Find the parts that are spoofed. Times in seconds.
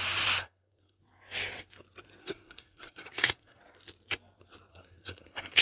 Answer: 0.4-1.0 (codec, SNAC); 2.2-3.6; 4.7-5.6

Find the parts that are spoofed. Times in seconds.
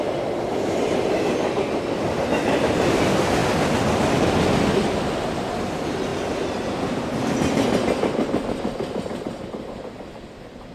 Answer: none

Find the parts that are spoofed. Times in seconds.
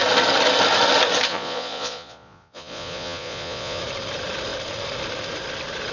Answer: 1.3-3.8 (vocoder, Vocos)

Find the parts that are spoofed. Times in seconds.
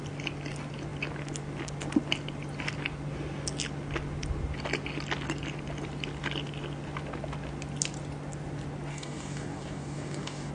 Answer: 8.9-10.5 (codec, DAC)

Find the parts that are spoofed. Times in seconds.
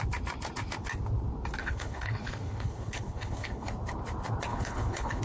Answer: 1.6-3.7 (codec, HILCodec); 4.5-5.2